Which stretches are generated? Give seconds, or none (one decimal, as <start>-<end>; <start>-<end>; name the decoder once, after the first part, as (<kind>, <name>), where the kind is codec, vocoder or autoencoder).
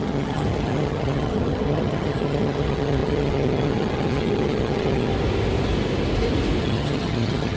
0.0-5.1 (vocoder, HiFi-GAN); 6.6-7.6